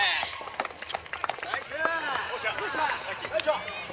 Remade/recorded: recorded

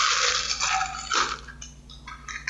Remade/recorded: remade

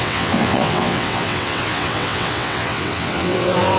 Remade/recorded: remade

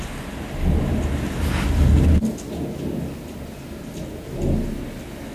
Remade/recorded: recorded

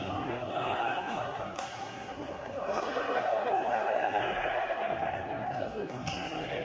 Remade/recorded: remade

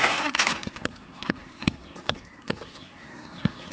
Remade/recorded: remade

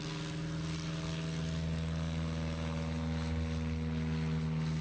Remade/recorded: recorded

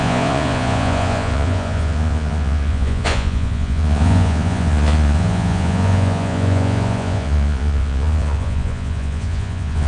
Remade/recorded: remade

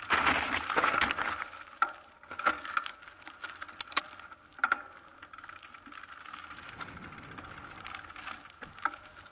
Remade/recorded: recorded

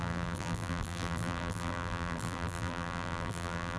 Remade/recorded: remade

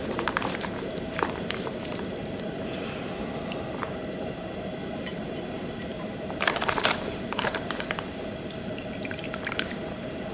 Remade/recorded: remade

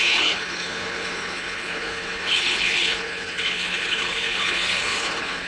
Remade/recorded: remade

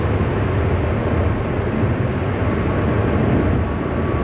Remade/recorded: recorded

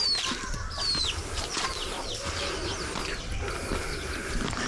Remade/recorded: recorded